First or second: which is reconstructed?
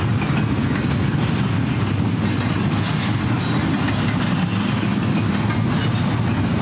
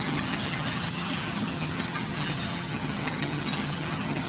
second